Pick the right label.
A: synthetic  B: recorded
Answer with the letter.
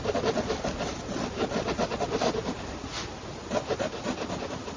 B